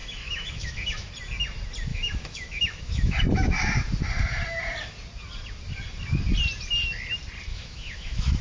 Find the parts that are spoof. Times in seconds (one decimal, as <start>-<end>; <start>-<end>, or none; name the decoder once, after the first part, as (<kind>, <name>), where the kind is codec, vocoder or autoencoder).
0.0-1.1 (autoencoder, DAC-VAE); 1.9-3.2; 7.5-8.4